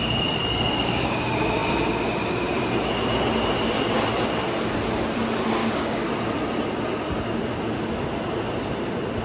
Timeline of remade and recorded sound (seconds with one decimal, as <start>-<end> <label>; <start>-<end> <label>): 0.0-0.4 recorded; 0.4-1.2 remade; 1.2-5.6 recorded; 5.6-6.1 remade; 6.1-9.2 recorded